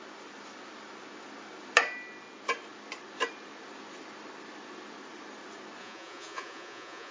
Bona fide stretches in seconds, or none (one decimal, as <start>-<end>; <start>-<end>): 0.0-5.8